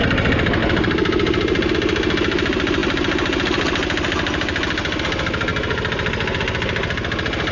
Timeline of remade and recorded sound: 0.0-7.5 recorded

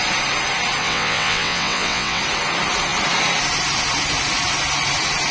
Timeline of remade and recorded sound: 0.0-0.8 recorded; 0.8-2.2 remade; 2.2-5.3 recorded

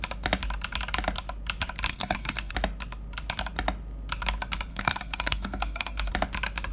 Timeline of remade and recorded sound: 0.0-1.9 recorded; 1.9-2.5 remade; 2.5-4.7 recorded; 4.7-6.1 remade; 6.1-6.7 recorded

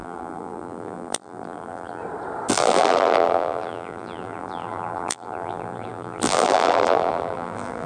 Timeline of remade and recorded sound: 0.0-2.0 remade; 2.0-2.5 recorded; 2.5-7.9 remade

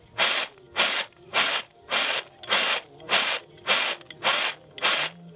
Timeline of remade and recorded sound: 0.0-5.4 recorded